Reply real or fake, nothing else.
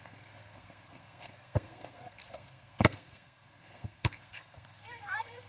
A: fake